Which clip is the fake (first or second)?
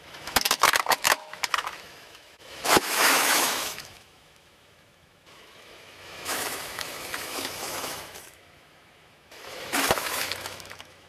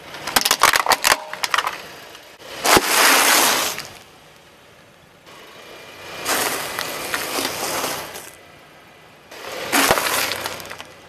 first